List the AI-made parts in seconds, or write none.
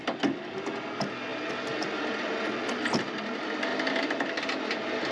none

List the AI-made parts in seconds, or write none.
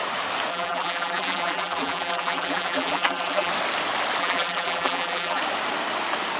0.5-3.5 (vocoder, BigVGAN v2); 4.2-5.4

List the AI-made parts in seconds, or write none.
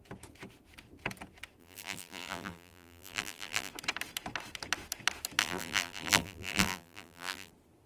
1.6-3.7 (vocoder, BigVGAN v2); 5.4-7.5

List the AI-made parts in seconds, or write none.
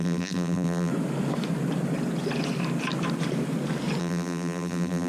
0.0-0.9 (vocoder, BigVGAN v2); 4.0-5.1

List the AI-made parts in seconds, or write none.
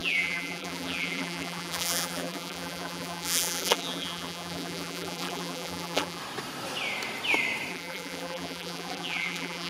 0.0-6.2 (vocoder, BigVGAN v2); 7.7-9.7